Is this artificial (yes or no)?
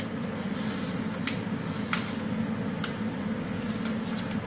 no